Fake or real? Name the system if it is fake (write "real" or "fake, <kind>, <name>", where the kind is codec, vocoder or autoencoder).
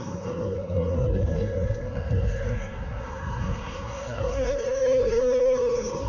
fake, codec, SNAC